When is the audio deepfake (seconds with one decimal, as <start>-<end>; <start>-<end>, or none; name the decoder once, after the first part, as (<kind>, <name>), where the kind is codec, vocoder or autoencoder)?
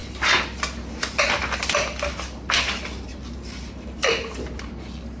none